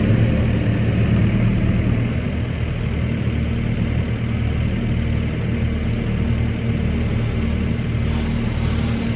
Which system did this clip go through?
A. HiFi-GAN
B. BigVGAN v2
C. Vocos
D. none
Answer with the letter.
D